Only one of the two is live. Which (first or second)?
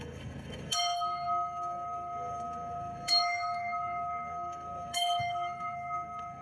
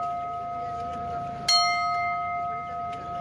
second